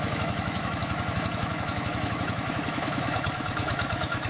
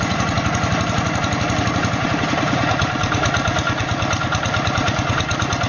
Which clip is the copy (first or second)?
first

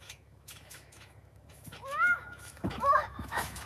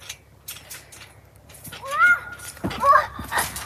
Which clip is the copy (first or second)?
first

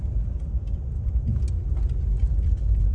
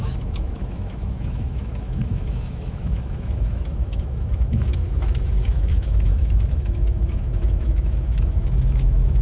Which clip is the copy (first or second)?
second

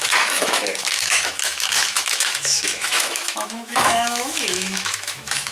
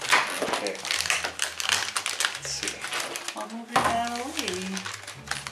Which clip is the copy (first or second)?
first